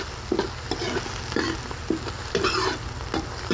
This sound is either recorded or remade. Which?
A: recorded